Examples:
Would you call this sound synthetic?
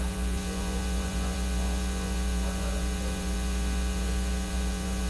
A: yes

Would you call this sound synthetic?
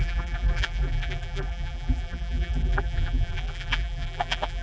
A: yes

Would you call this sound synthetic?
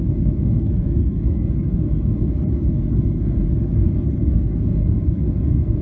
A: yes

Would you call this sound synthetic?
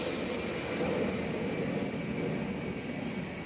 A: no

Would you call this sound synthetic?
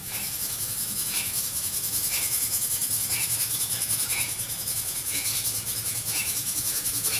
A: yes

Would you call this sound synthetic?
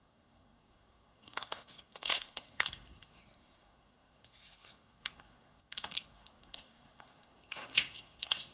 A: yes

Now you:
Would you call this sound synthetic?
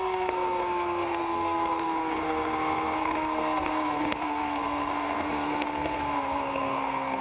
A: yes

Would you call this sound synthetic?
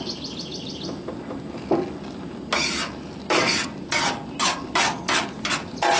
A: no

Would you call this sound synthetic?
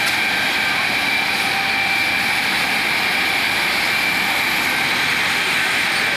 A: no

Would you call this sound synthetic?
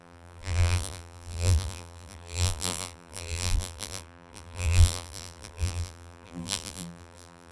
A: yes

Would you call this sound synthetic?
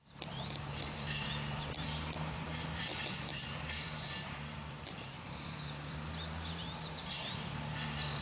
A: yes